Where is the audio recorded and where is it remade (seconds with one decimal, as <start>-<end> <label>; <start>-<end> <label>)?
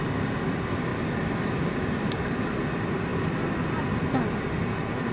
0.0-5.1 recorded